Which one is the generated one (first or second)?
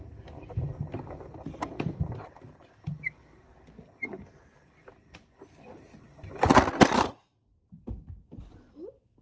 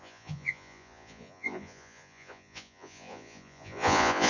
second